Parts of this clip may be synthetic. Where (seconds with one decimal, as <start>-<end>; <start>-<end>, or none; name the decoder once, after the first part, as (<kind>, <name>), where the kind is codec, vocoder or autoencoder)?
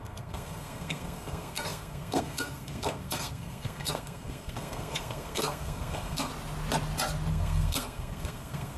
0.0-6.3 (codec, SNAC); 7.3-8.8